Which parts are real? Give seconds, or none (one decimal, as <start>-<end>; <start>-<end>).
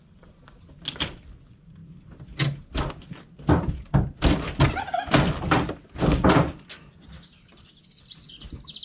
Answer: 0.0-8.8